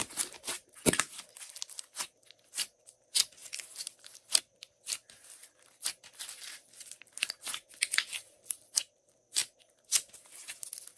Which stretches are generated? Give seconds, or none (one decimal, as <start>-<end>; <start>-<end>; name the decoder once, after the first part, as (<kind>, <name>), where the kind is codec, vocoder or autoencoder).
none